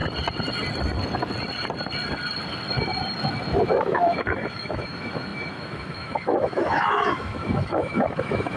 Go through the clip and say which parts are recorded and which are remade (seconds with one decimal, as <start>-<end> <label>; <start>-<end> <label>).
0.0-3.7 recorded; 3.7-8.6 remade